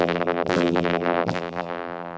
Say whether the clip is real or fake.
fake